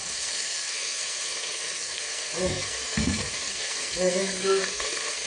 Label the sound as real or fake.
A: fake